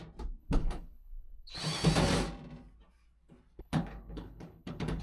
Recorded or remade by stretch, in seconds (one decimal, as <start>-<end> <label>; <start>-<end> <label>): 0.0-0.4 recorded; 0.4-1.6 remade; 1.6-3.6 recorded; 3.6-5.0 remade